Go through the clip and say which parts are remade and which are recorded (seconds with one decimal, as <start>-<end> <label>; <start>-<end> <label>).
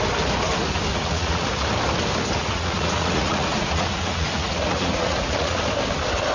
0.0-0.9 recorded; 0.9-1.5 remade; 1.5-2.4 recorded; 2.4-5.6 remade; 5.6-6.3 recorded